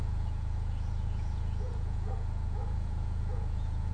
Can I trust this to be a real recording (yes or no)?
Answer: no